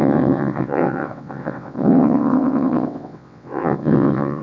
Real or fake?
fake